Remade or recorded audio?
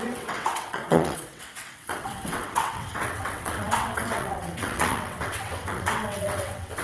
remade